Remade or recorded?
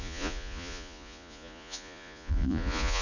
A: remade